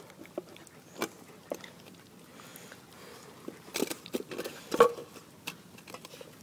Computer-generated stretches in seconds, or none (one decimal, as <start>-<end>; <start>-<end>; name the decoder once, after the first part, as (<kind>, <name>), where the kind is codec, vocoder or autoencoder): none